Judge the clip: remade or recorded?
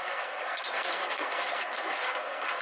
remade